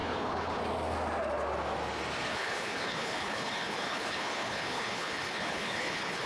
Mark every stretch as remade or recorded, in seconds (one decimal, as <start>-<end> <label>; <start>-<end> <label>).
0.0-0.6 remade; 0.6-2.3 recorded; 2.3-6.3 remade